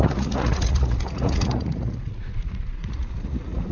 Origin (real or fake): fake